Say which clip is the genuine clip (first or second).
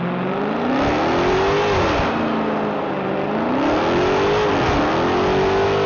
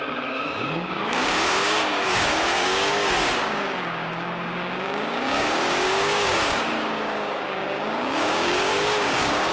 first